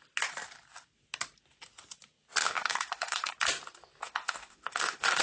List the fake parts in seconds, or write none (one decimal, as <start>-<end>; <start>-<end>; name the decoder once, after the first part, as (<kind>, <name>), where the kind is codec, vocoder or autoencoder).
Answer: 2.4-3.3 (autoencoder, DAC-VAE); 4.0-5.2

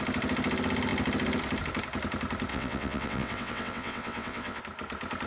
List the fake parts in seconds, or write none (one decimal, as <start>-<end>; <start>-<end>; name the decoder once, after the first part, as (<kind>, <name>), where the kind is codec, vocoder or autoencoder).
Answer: 2.5-4.6 (vocoder, WaveNeXt)

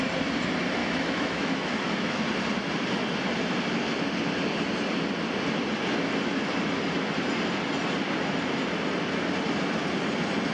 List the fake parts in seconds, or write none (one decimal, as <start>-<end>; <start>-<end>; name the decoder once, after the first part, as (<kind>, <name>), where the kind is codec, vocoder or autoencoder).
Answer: 0.8-2.2 (autoencoder, DAC-VAE)